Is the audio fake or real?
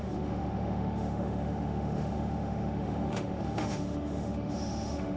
fake